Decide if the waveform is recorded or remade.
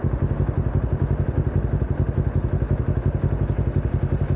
recorded